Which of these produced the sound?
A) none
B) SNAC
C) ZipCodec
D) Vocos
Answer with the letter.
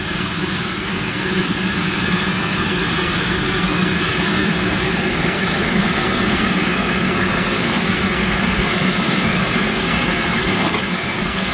B